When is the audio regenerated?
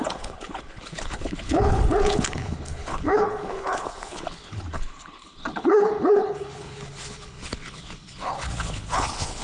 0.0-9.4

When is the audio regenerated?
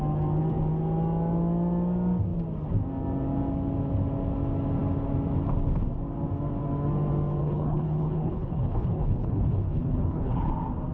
7.4-10.5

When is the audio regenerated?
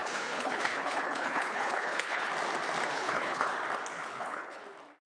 0.0-2.3; 2.9-3.5; 4.0-4.6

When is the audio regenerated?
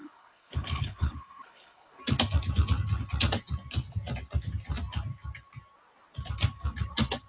0.0-2.0